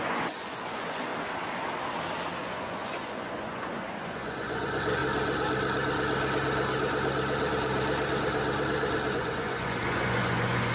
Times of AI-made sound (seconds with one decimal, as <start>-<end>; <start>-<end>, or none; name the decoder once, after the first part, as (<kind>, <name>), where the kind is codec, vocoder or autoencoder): 0.0-1.1 (vocoder, Vocos); 2.4-5.0; 9.1-10.7